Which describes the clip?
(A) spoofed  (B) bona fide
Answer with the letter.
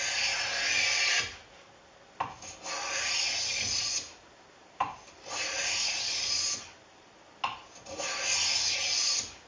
B